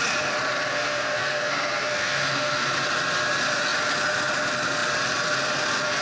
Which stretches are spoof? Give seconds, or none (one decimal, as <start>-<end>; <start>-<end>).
0.7-2.7